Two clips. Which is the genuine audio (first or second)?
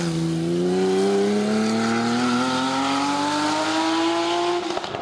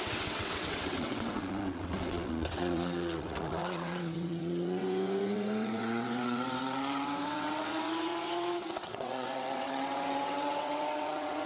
first